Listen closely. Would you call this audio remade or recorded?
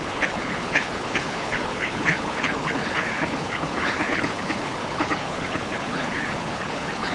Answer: remade